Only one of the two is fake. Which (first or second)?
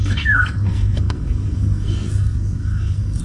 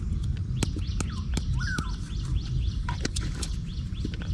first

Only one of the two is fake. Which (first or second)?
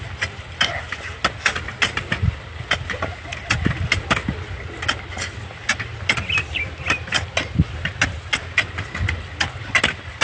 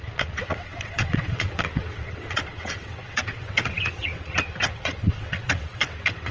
second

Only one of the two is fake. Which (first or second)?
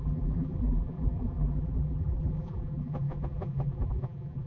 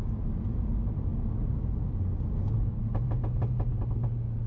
first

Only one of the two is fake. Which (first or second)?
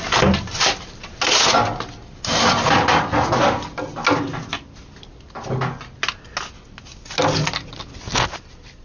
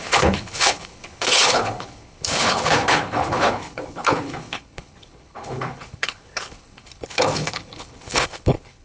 second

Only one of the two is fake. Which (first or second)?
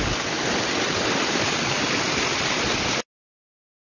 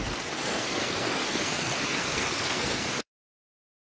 second